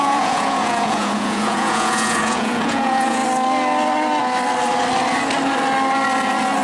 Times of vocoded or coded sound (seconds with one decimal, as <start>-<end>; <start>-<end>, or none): 0.0-3.2